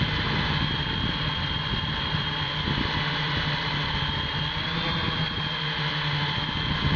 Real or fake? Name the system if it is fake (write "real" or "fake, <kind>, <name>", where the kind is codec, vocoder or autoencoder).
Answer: real